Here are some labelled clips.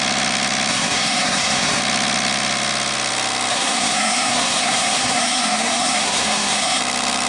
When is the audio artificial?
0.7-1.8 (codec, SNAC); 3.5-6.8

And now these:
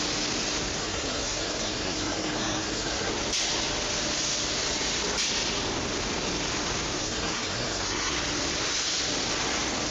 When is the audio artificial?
0.8-3.1 (codec, SNAC); 7.0-8.1

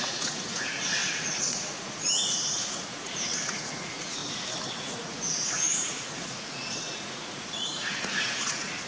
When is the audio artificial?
0.0-4.2 (vocoder, Vocos); 4.7-8.9

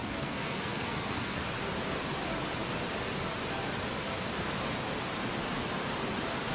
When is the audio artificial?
0.0-1.4 (codec, SNAC)

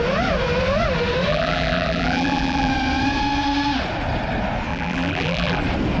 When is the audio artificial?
1.3-2.7 (vocoder, BigVGAN v2); 4.7-5.6

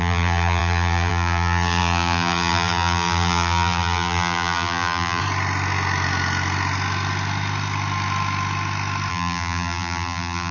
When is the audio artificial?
0.0-5.2 (vocoder, BigVGAN v2); 9.1-10.5

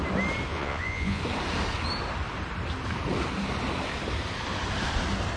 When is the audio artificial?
0.5-1.2 (vocoder, Vocos)

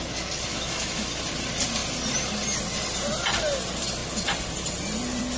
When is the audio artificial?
0.5-1.1 (autoencoder, DAC-VAE)